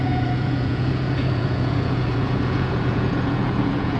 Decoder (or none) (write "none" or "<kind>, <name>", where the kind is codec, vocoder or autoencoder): vocoder, Vocos